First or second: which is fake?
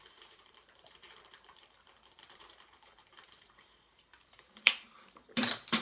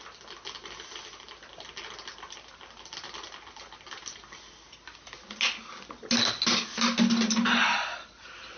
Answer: first